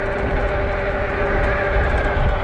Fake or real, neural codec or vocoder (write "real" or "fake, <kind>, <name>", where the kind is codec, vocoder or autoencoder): real